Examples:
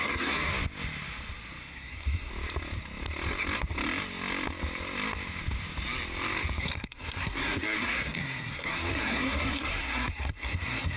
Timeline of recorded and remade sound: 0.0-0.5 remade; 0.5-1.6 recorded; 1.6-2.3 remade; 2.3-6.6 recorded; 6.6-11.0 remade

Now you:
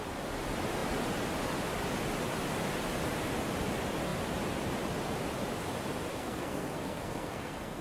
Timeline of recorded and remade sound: 0.0-6.1 recorded; 6.1-7.8 remade

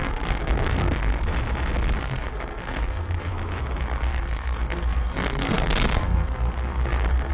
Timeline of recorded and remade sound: 0.0-1.2 remade; 1.2-2.0 recorded; 2.0-3.3 remade; 3.3-3.8 recorded; 3.8-7.3 remade

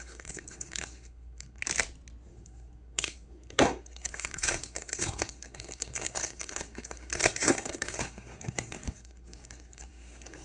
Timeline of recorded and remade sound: 0.0-1.6 remade; 1.6-2.3 recorded; 2.3-10.4 remade

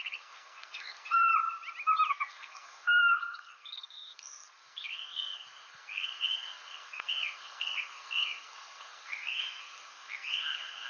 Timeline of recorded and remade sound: 0.0-1.3 remade; 1.3-2.1 recorded; 2.1-10.9 remade